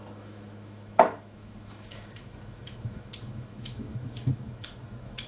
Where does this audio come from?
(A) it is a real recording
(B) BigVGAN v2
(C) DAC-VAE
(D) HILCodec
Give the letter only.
C